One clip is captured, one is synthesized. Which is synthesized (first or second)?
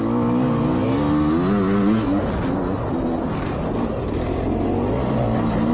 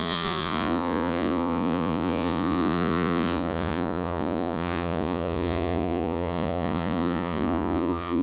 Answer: second